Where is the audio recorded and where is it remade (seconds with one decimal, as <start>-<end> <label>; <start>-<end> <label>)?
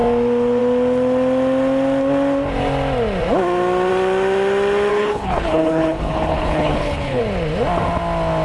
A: 0.0-4.9 recorded; 4.9-7.2 remade; 7.2-8.4 recorded